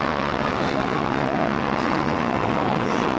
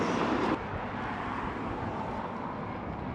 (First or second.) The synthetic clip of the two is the first